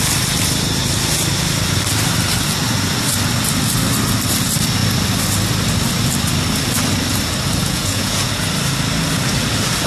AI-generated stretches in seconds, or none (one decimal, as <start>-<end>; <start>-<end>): 7.6-8.3

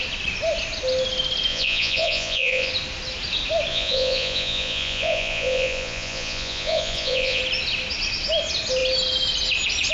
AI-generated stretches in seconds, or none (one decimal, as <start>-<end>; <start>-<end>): 1.5-2.7; 3.7-7.4

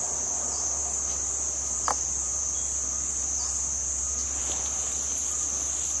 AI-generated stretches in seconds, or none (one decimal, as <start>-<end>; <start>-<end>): none

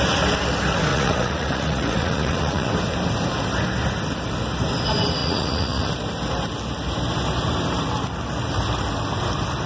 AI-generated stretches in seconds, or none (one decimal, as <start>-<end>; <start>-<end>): 0.9-2.7; 5.2-5.9

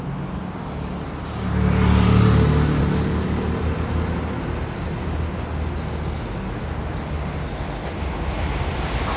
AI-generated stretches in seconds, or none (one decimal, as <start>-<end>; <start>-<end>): none

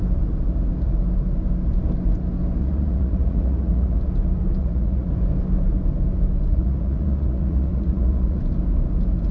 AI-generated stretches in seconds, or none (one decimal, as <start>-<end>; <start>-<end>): 2.6-4.0; 4.6-5.1; 6.5-8.4

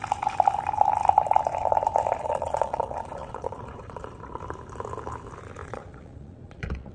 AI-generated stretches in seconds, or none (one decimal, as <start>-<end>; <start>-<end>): 2.2-4.4; 5.6-6.9